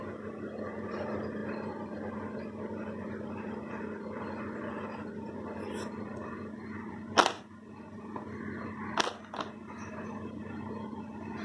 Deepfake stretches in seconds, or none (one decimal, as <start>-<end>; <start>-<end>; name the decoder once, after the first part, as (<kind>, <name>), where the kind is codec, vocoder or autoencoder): none